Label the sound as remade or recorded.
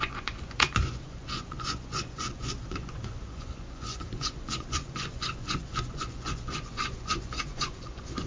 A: remade